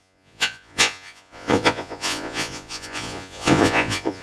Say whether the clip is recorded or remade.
remade